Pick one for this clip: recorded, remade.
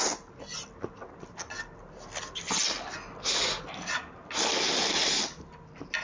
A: recorded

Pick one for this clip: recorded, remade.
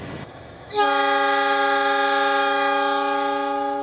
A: remade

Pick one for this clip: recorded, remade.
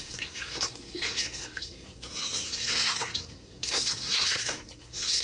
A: remade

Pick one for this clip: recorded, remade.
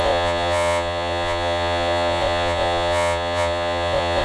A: remade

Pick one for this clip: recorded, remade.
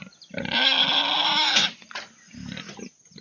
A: recorded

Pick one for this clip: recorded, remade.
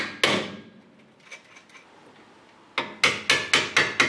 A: recorded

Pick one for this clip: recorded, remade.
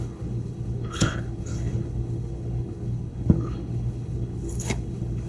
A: remade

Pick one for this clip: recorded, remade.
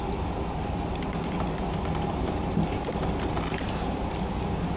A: recorded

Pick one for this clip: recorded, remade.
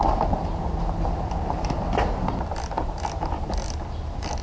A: recorded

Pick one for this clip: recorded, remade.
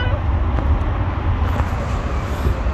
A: recorded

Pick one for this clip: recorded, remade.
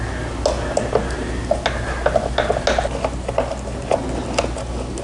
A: recorded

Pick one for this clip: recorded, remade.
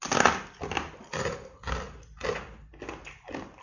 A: recorded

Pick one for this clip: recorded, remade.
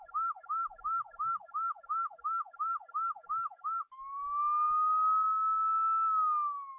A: recorded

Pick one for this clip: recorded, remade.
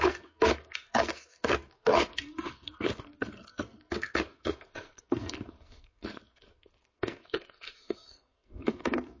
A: remade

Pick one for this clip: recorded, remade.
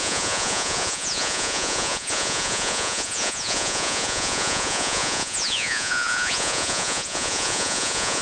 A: remade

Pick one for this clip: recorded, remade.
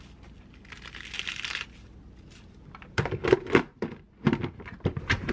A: recorded